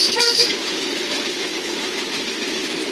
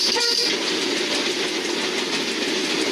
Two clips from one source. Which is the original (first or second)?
second